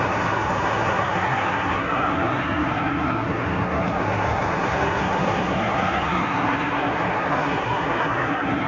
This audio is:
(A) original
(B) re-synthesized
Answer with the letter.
B